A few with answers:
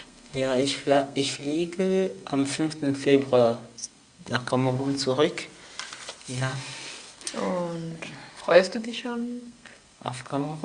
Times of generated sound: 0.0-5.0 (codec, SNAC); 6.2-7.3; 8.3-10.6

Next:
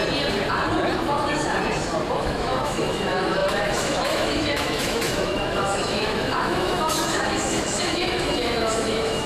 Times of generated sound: 2.2-9.3 (autoencoder, DAC-VAE)

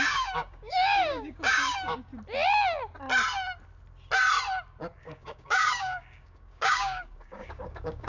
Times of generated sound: 0.0-2.1 (codec, DAC); 5.0-8.1

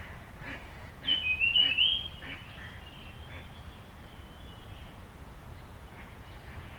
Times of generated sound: 0.0-1.9 (vocoder, Vocos); 4.4-6.8

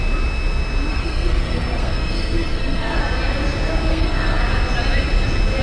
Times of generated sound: 0.9-3.0 (codec, SNAC); 3.9-4.4